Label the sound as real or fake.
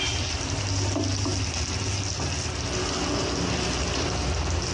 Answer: real